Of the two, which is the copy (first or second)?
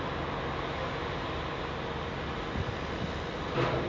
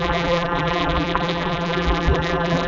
second